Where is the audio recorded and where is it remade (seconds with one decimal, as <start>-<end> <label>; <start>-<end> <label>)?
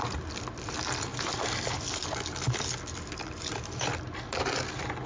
0.0-5.1 recorded